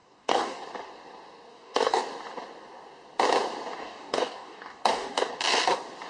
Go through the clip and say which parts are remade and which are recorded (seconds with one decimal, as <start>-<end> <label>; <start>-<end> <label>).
0.0-0.6 remade; 0.6-1.5 recorded; 1.5-2.0 remade; 2.0-3.8 recorded; 3.8-5.3 remade; 5.3-6.1 recorded